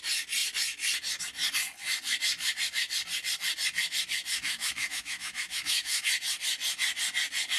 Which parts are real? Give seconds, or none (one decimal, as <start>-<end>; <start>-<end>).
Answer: 0.0-4.3; 6.1-7.6